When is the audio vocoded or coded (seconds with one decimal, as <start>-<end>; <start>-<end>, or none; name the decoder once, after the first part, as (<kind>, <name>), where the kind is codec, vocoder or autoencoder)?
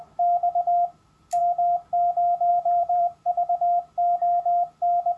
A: 2.5-3.3 (vocoder, BigVGAN v2)